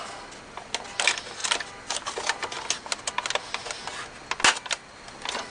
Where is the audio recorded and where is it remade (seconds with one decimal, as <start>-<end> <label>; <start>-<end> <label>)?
0.0-5.5 recorded